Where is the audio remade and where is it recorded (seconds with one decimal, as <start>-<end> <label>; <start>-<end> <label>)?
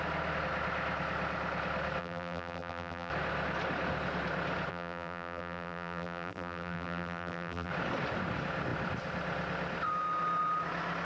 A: 0.0-2.0 recorded; 2.0-3.1 remade; 3.1-4.7 recorded; 4.7-7.7 remade; 7.7-11.0 recorded